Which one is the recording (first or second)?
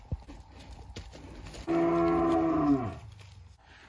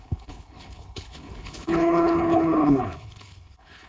first